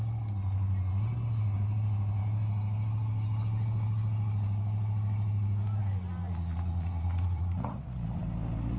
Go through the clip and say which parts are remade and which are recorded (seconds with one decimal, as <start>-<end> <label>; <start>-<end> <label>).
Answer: 0.0-6.2 recorded; 6.2-8.2 remade; 8.2-8.8 recorded